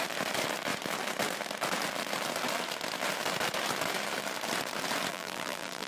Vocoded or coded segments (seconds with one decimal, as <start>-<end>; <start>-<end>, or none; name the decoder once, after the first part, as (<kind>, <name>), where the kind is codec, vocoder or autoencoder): 5.1-5.9 (vocoder, BigVGAN v2)